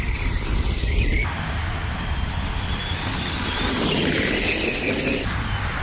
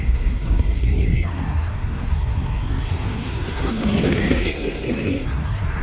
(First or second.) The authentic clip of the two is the first